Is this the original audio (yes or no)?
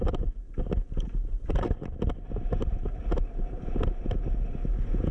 yes